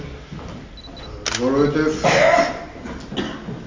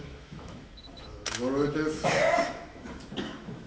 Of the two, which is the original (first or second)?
first